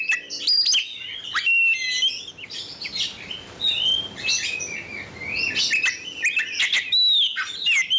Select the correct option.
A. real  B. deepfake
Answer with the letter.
A